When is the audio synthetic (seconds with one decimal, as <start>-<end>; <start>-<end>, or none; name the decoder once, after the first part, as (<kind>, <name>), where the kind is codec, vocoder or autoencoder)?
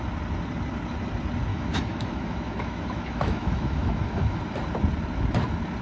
1.5-4.4 (autoencoder, DAC-VAE)